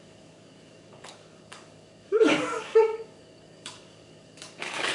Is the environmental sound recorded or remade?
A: remade